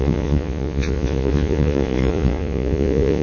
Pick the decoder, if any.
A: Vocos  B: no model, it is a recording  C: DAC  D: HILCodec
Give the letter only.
A